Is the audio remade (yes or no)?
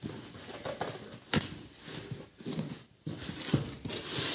no